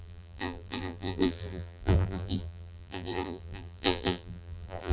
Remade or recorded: remade